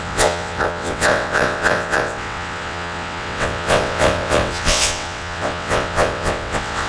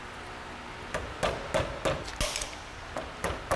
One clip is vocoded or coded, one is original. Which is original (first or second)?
second